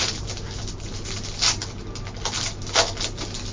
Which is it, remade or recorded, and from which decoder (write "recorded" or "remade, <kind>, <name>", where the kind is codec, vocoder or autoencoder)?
recorded